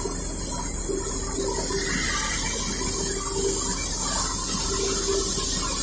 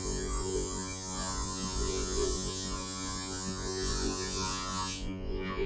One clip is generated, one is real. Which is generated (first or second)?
second